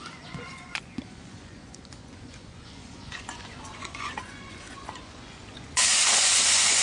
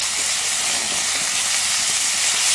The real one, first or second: second